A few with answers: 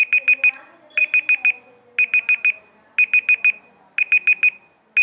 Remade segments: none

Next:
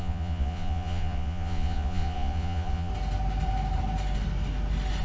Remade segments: 0.0-2.9

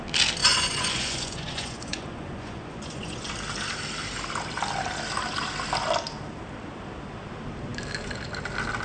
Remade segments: 0.4-3.3

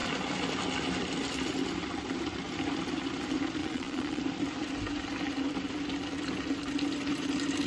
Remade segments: 3.6-4.2